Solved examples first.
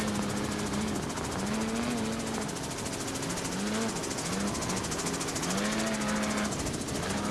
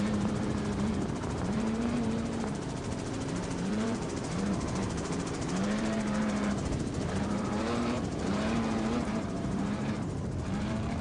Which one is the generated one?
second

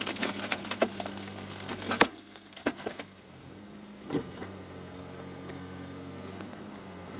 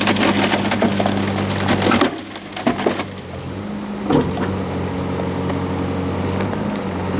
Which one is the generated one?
first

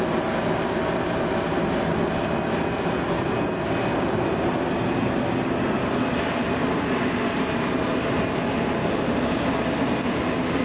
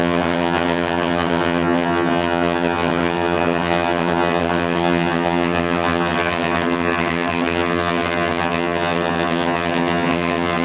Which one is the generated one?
second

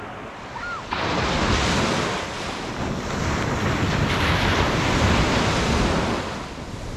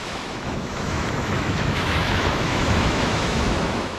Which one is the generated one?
second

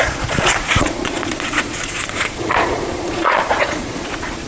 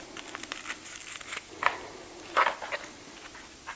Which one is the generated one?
first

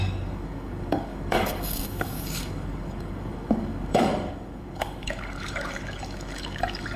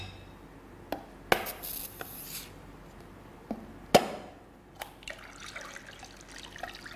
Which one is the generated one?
first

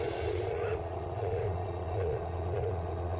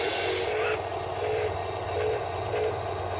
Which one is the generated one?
first